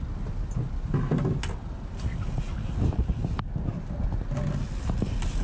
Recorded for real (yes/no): yes